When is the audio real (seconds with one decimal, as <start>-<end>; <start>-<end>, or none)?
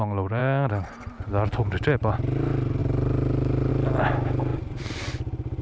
0.0-2.8; 3.7-4.5